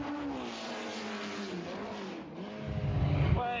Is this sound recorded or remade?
recorded